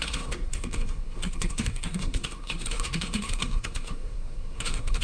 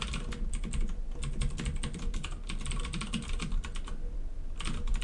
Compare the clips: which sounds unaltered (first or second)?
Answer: second